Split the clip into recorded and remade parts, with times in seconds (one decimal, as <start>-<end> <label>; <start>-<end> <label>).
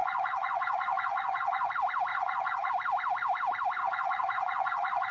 0.0-1.7 remade; 1.7-2.1 recorded; 2.1-2.7 remade; 2.7-3.8 recorded; 3.8-5.1 remade